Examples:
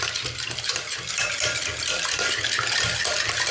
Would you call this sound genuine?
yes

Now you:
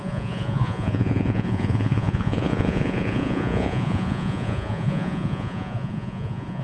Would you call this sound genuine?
no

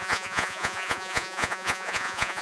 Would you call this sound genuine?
no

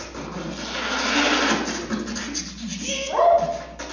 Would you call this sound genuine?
yes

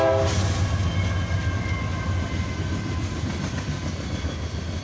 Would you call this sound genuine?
yes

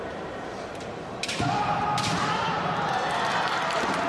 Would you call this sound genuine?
yes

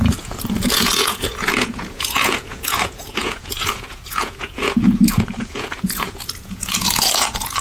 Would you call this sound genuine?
no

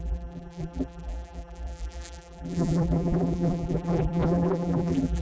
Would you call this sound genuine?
no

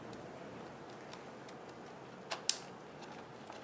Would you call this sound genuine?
yes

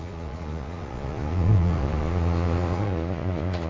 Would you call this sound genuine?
no